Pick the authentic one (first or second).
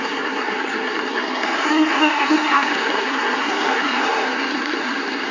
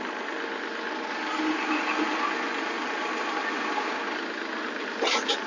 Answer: second